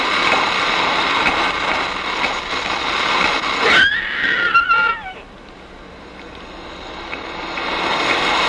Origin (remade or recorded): recorded